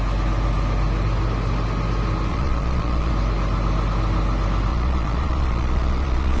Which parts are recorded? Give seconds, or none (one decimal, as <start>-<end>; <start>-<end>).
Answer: 0.0-2.3; 3.1-4.7